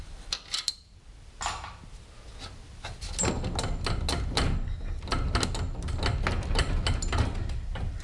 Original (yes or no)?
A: yes